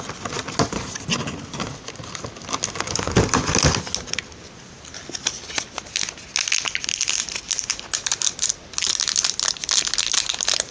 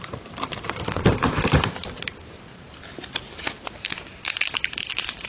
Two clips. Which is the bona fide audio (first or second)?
first